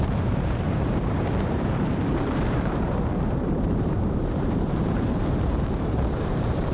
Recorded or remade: remade